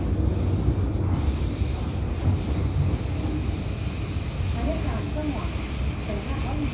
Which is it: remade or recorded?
recorded